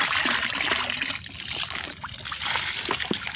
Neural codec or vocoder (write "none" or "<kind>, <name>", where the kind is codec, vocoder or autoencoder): none